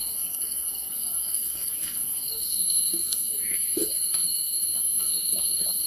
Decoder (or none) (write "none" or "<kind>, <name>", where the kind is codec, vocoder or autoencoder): codec, SNAC